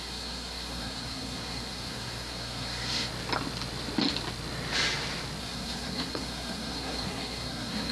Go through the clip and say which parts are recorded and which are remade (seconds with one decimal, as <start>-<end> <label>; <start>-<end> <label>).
0.0-3.1 remade; 3.1-5.4 recorded; 5.4-7.9 remade